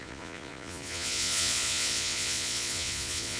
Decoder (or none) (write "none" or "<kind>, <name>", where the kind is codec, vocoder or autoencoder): vocoder, Vocos